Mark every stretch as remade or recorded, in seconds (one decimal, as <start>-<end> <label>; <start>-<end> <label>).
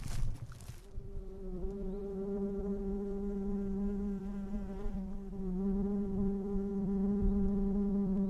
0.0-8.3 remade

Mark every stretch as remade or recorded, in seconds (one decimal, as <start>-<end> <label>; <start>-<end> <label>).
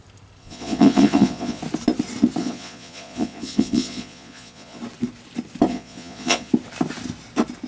0.0-0.4 recorded; 0.4-1.6 remade; 1.6-2.4 recorded; 2.4-4.8 remade; 4.8-5.7 recorded; 5.7-6.5 remade; 6.5-7.7 recorded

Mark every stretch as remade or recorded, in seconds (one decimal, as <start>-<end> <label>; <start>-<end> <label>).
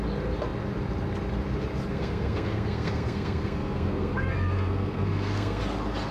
0.0-1.9 recorded; 1.9-5.6 remade; 5.6-6.1 recorded